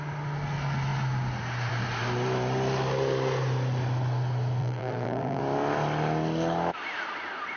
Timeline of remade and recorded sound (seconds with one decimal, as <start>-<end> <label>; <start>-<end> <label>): 0.0-4.6 recorded; 4.6-5.4 remade; 5.4-7.6 recorded